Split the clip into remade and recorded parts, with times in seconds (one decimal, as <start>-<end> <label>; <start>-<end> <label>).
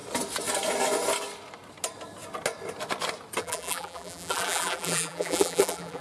0.0-3.4 recorded; 3.4-6.0 remade